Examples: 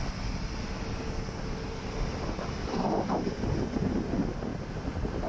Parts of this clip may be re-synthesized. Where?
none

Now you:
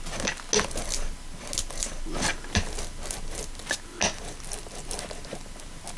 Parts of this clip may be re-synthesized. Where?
none

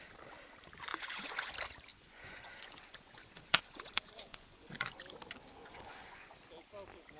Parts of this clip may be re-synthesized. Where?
0.9-1.5 (vocoder, Vocos); 1.9-5.0; 5.6-6.3

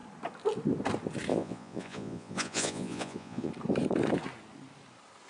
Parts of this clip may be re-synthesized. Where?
1.3-3.5 (vocoder, Vocos)

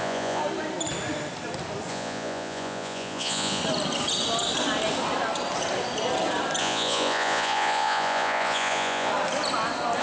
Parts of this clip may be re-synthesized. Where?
0.0-0.4 (vocoder, Vocos); 1.9-3.6; 6.6-9.1

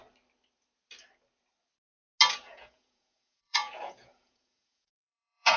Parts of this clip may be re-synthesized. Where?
2.3-5.6 (vocoder, Vocos)